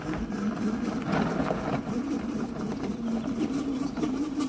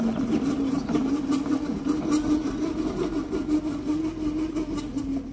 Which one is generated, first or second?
first